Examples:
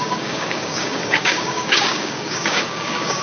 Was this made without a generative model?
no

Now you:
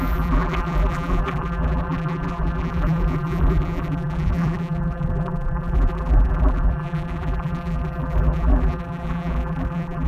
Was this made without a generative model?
no